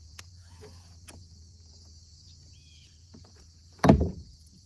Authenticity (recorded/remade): remade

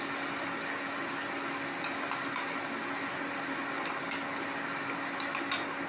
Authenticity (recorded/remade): recorded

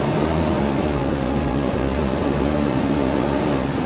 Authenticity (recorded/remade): remade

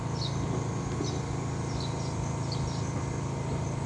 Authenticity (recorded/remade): recorded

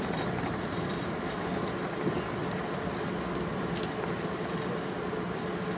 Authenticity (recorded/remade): recorded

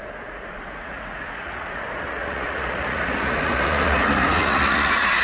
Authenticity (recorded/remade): remade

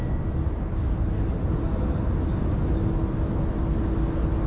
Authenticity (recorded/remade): recorded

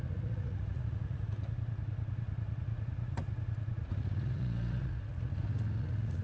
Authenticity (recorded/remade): remade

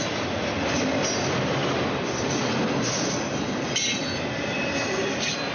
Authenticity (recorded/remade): recorded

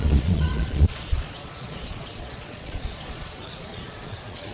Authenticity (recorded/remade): remade